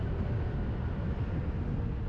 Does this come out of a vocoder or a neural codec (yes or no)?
no